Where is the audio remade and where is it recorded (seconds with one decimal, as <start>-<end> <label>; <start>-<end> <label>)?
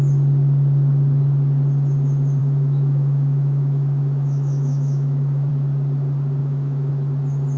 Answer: 0.0-2.4 recorded; 2.4-5.5 remade; 5.5-6.4 recorded; 6.4-6.9 remade; 6.9-7.6 recorded